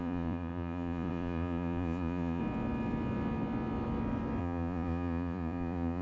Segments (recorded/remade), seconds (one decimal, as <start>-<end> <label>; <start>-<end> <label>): 0.0-2.4 remade; 2.4-4.4 recorded; 4.4-6.0 remade